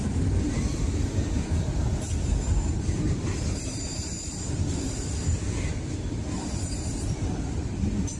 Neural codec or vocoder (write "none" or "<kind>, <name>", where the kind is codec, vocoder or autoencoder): vocoder, BigVGAN v2